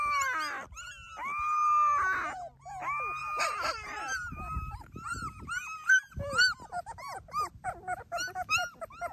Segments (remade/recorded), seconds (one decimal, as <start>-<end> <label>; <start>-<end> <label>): 0.0-3.2 recorded; 3.2-5.5 remade; 5.5-9.1 recorded